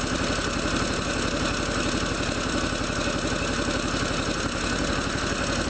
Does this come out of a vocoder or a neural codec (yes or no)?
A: no